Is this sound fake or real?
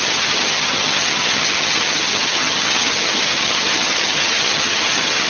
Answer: fake